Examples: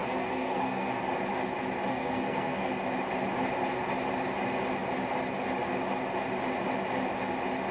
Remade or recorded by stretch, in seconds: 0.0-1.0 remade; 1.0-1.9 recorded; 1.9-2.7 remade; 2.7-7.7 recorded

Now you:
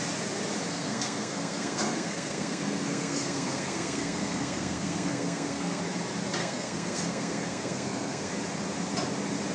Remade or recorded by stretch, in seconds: 0.0-0.7 recorded; 0.7-5.8 remade; 5.8-6.4 recorded; 6.4-8.3 remade; 8.3-9.5 recorded

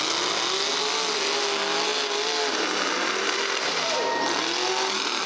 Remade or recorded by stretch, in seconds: 0.0-5.3 recorded